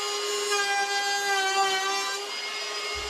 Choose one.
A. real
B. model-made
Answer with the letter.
A